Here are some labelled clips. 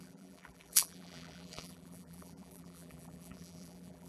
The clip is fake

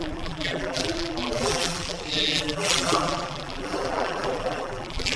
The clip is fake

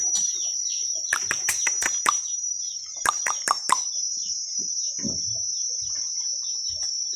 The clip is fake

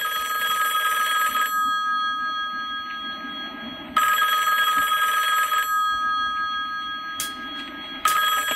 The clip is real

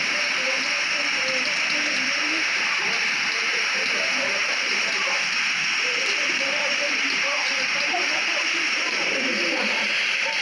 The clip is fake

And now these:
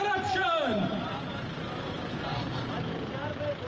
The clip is fake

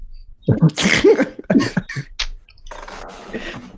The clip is real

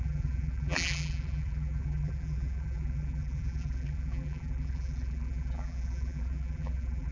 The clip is fake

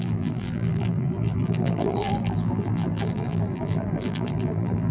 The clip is fake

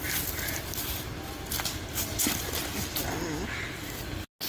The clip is real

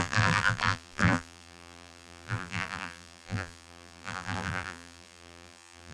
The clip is fake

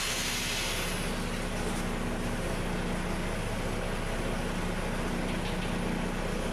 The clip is real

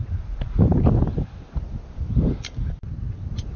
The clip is real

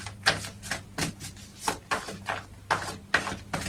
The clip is real